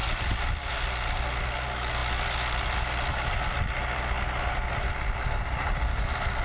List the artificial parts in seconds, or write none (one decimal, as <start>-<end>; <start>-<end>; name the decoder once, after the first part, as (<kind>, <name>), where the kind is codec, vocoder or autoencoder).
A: none